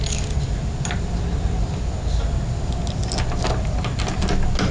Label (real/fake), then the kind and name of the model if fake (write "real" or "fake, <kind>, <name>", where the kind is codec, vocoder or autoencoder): real